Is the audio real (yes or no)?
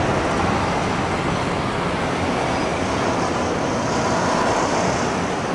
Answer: yes